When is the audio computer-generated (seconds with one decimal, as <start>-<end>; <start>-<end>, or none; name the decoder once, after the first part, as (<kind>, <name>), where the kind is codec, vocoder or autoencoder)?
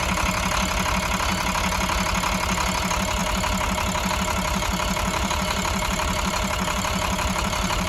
4.5-7.9 (vocoder, BigVGAN v2)